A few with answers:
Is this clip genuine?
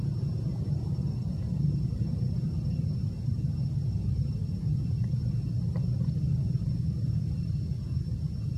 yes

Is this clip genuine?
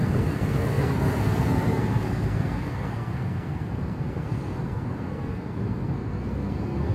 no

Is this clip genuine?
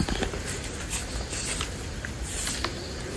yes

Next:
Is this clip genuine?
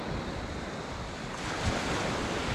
yes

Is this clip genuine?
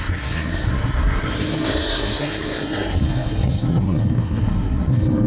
no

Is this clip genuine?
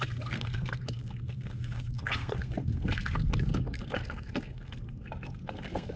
no